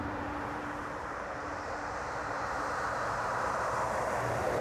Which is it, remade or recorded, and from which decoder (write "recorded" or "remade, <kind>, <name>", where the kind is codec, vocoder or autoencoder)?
remade, vocoder, BigVGAN v2